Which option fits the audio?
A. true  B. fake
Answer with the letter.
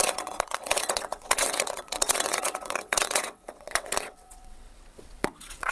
B